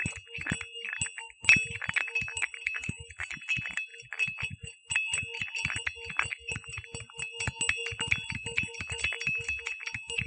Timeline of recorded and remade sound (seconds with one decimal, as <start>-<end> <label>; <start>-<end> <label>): 0.0-10.3 recorded